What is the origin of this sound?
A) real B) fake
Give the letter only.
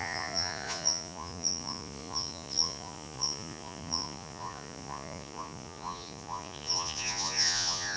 B